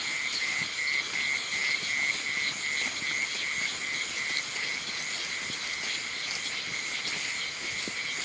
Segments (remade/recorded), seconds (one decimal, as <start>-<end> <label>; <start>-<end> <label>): 0.0-8.2 recorded